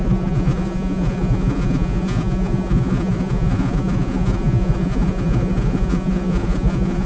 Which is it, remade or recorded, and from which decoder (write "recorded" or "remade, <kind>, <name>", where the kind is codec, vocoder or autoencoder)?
remade, vocoder, Vocos